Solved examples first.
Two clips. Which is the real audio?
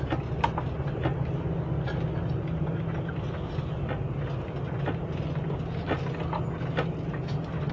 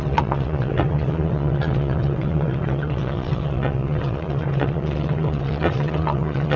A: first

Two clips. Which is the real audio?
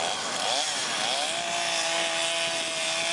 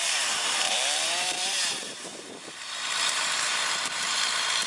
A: first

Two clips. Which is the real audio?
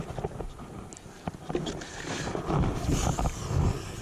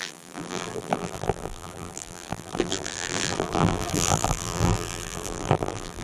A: first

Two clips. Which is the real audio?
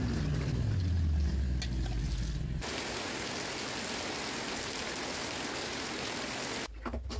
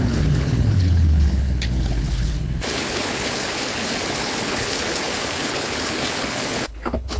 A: first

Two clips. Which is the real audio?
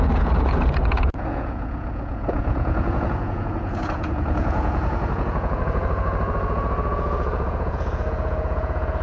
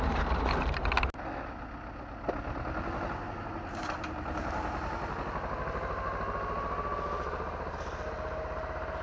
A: second